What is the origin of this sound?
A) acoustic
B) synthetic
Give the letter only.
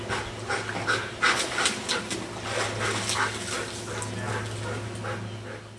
A